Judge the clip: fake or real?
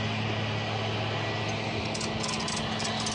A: real